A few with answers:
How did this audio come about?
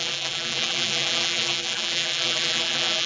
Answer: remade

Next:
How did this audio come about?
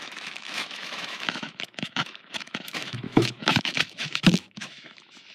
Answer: remade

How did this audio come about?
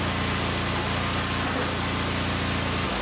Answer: recorded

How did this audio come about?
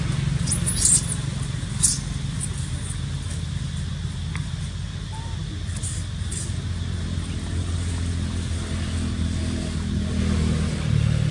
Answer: recorded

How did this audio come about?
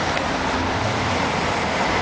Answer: recorded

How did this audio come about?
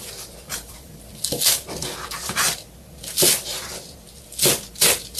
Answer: recorded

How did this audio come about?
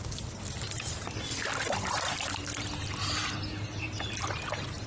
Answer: recorded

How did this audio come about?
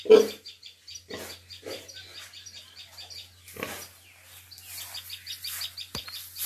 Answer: recorded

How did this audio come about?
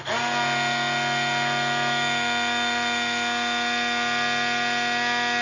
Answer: recorded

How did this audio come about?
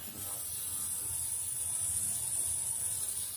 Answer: recorded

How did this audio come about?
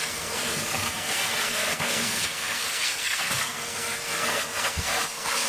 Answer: remade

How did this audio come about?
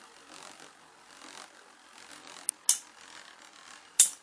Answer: recorded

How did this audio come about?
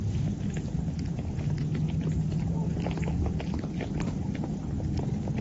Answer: recorded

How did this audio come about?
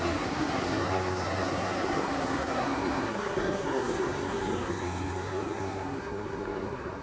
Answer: remade